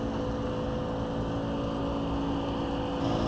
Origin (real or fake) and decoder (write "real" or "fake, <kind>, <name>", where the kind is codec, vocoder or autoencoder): real